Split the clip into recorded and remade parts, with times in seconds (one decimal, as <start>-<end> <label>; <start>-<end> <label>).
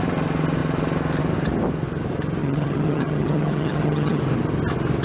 0.0-2.4 recorded; 2.4-4.2 remade; 4.2-5.0 recorded